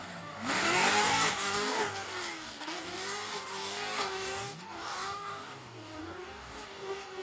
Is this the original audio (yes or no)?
no